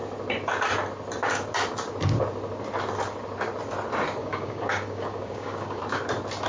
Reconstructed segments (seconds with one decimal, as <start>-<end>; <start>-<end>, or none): 4.2-5.8